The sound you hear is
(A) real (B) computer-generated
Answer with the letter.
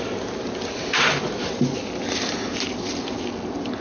A